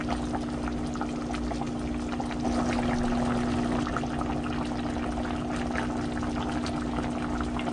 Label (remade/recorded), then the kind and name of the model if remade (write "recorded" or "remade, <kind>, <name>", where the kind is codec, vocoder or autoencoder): recorded